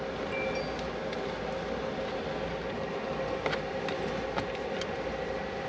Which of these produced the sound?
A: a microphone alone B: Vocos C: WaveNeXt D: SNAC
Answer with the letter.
A